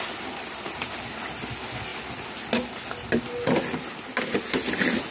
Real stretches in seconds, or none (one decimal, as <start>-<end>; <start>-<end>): 0.0-5.1